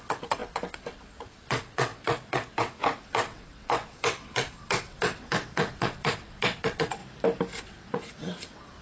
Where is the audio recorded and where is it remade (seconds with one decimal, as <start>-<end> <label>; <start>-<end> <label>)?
0.0-7.0 remade; 7.0-7.6 recorded; 7.6-8.8 remade